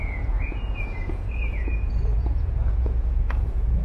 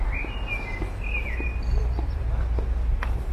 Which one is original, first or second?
second